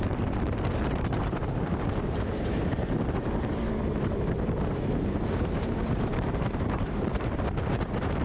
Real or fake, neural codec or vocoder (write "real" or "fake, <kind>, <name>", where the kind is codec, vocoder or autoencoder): fake, vocoder, BigVGAN v2